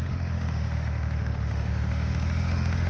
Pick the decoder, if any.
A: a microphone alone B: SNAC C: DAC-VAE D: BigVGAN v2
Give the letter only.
C